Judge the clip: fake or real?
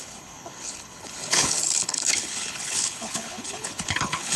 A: fake